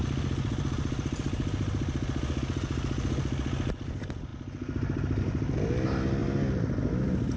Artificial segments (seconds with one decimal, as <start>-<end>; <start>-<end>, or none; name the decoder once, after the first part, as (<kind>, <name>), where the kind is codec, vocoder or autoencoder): none